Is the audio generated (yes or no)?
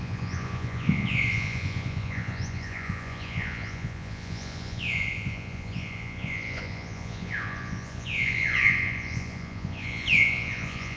yes